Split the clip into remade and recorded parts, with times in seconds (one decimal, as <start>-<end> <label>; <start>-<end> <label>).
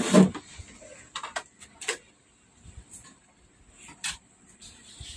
0.0-5.2 recorded